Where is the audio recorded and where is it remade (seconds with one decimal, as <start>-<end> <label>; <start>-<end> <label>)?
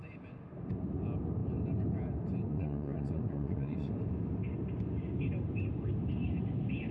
0.0-2.5 recorded; 2.5-3.9 remade; 3.9-6.9 recorded